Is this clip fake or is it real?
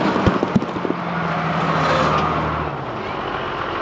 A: real